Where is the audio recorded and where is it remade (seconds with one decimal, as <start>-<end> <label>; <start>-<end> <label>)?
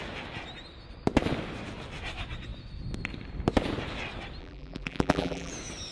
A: 0.0-4.4 recorded; 4.4-5.5 remade; 5.5-5.9 recorded